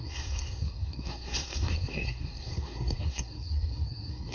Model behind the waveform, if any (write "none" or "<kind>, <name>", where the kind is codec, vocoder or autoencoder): codec, SNAC